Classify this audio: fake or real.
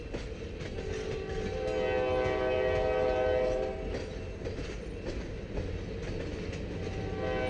real